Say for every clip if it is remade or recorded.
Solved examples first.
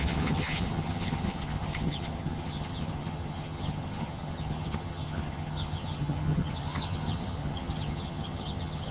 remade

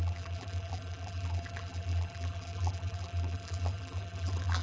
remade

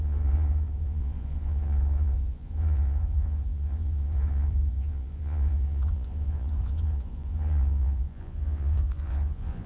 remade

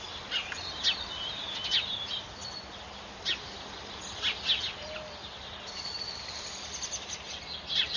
recorded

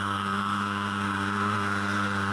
remade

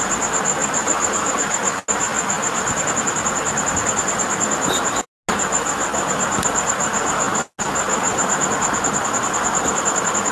recorded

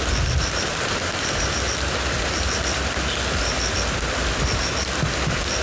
recorded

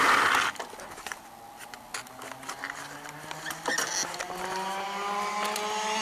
recorded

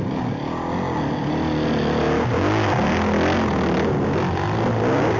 recorded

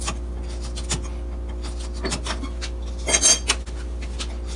recorded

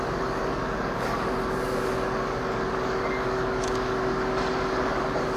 remade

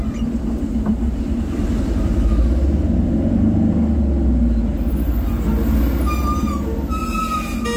recorded